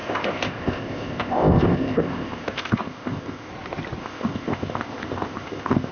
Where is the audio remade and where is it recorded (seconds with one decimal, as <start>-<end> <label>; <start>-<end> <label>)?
0.0-3.5 remade; 3.5-4.0 recorded; 4.0-5.9 remade